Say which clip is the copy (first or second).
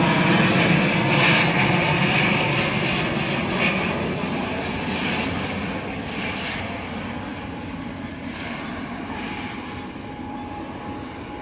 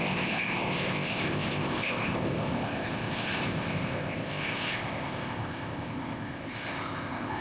second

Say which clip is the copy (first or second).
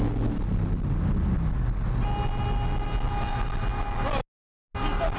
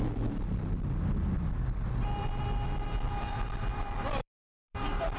second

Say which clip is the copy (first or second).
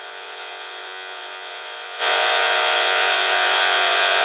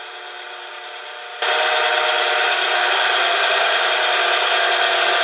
first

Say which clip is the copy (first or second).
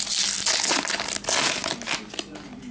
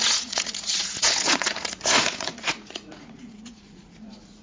second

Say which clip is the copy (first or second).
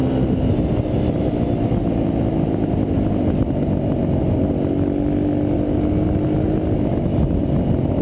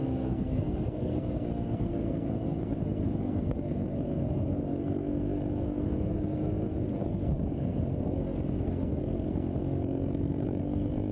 second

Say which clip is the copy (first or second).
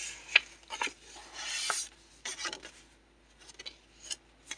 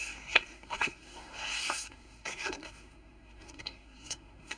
second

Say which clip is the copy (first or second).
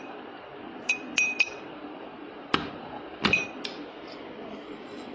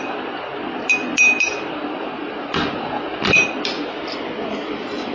first